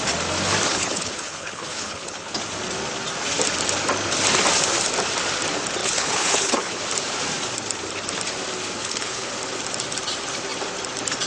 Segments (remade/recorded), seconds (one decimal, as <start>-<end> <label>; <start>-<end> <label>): 0.0-0.7 recorded; 0.7-2.4 remade; 2.4-5.8 recorded; 5.8-6.8 remade; 6.8-8.8 recorded; 8.8-9.3 remade; 9.3-11.3 recorded

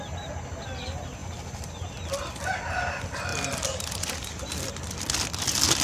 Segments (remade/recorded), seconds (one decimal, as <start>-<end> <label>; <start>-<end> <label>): 0.0-1.2 recorded; 1.2-1.7 remade; 1.7-2.2 recorded; 2.2-2.8 remade; 2.8-3.3 recorded; 3.3-4.3 remade; 4.3-5.8 recorded

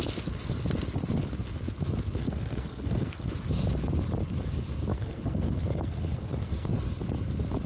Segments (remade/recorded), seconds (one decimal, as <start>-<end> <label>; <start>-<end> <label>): 0.0-2.2 recorded; 2.2-3.3 remade; 3.3-4.9 recorded; 4.9-6.8 remade; 6.8-7.7 recorded